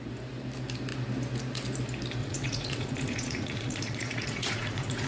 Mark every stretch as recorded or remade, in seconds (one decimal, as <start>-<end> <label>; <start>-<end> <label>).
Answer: 0.0-2.2 recorded; 2.2-5.1 remade